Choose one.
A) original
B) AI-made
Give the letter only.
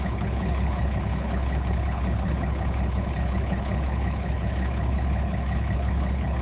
B